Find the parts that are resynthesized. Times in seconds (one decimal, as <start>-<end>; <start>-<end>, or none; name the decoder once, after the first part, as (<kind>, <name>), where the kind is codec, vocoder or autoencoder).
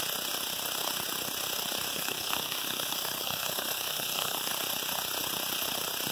1.9-4.5 (codec, SNAC)